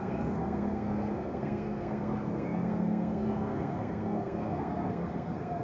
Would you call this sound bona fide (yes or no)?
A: no